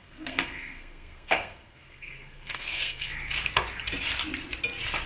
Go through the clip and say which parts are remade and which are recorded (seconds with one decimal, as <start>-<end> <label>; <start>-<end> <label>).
0.0-3.1 remade; 3.1-5.1 recorded